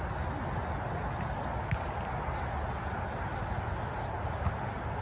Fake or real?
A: real